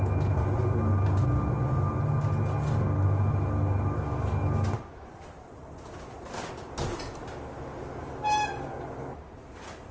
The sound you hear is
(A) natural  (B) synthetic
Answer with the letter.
A